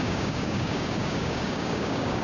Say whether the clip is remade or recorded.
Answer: remade